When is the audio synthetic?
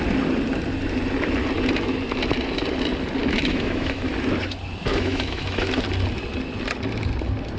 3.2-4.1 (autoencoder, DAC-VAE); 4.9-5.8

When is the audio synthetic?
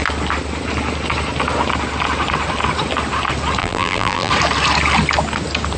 3.6-4.3 (vocoder, BigVGAN v2)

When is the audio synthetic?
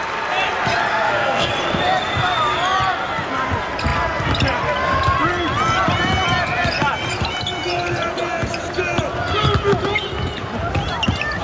0.9-1.5 (codec, SNAC)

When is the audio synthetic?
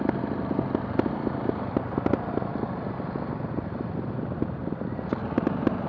4.6-5.5 (vocoder, BigVGAN v2)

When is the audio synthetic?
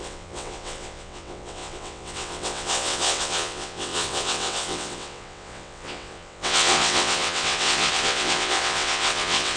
0.0-9.6 (vocoder, WaveNeXt)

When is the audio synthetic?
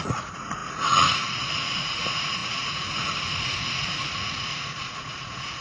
0.0-5.6 (vocoder, Vocos)